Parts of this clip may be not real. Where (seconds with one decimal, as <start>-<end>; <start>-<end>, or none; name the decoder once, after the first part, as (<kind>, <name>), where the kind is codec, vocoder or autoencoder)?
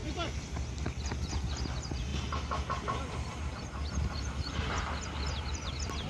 0.0-1.0 (vocoder, BigVGAN v2); 2.1-6.1